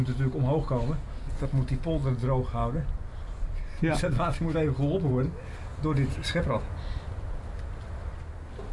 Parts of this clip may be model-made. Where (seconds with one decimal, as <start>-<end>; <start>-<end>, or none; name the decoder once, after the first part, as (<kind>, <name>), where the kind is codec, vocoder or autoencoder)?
none